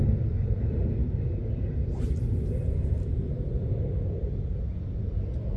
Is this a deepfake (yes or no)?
no